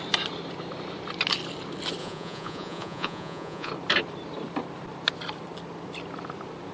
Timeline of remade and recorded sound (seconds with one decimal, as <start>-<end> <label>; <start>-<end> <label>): 0.0-2.0 recorded; 2.0-3.7 remade; 3.7-6.7 recorded